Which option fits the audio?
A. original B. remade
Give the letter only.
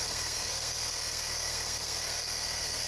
B